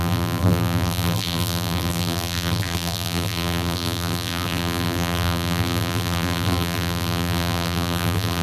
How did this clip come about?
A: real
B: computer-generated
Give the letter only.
B